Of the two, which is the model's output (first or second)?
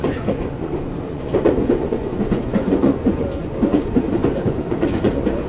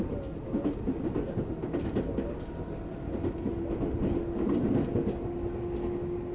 first